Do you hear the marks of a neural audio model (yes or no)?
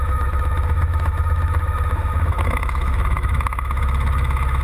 yes